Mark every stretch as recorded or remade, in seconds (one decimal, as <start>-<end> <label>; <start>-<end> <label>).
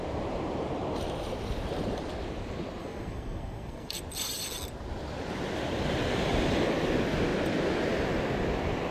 0.0-2.8 recorded; 2.8-4.0 remade; 4.0-8.9 recorded